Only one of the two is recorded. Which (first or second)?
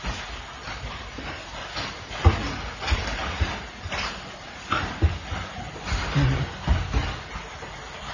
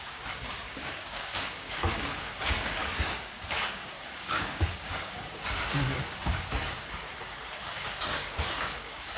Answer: first